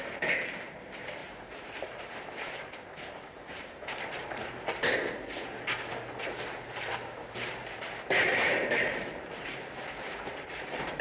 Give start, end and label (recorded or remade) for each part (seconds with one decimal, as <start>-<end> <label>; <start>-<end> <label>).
0.0-4.4 remade; 4.4-8.3 recorded; 8.3-11.0 remade